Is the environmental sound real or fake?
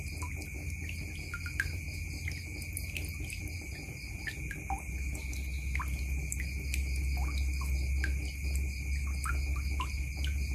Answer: real